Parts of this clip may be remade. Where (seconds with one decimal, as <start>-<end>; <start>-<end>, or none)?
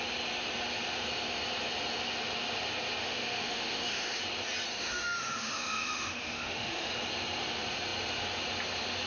3.0-4.2; 4.7-6.9